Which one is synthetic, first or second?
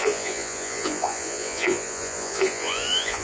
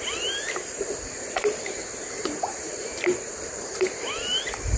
first